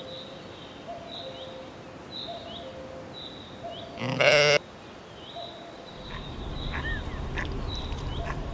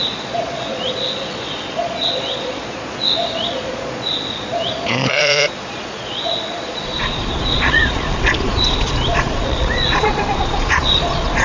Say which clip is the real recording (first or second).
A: first